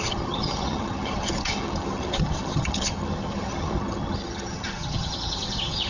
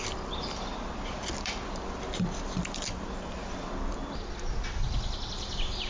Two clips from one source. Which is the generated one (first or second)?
first